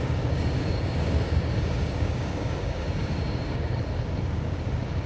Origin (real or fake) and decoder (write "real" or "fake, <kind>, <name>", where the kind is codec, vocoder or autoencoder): fake, codec, DAC